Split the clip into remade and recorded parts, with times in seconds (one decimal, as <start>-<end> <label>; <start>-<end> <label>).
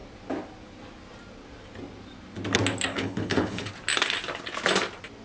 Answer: 0.0-2.9 recorded; 2.9-3.7 remade; 3.7-5.2 recorded